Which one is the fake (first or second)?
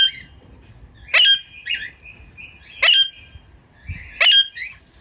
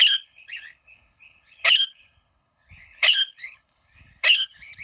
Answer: second